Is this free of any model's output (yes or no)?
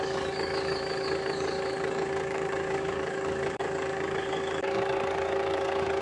no